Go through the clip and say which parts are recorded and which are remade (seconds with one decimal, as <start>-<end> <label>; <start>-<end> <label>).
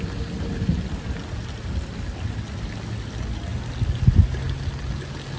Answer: 0.0-5.4 recorded